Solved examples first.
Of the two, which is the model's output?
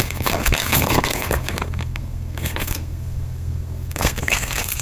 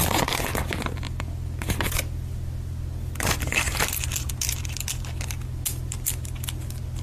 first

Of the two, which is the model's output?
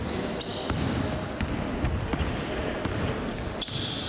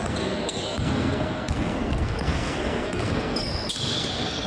second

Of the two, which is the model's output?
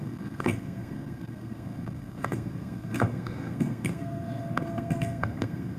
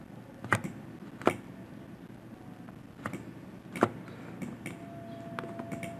first